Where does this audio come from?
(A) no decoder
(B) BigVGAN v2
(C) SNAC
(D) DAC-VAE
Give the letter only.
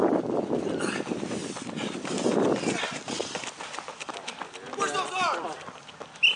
A